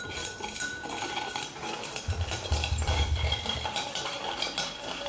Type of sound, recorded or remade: remade